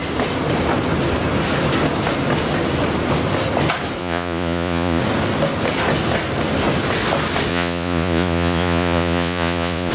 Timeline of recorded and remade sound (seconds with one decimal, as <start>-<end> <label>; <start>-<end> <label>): 0.0-4.0 recorded; 4.0-5.0 remade; 5.0-7.5 recorded; 7.5-9.9 remade